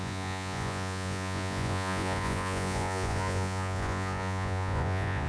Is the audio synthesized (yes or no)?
yes